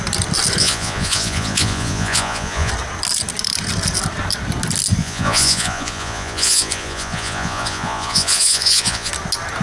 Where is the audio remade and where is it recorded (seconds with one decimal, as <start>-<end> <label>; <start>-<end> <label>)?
0.0-0.6 recorded; 0.6-2.7 remade; 2.7-5.0 recorded; 5.0-9.1 remade; 9.1-9.6 recorded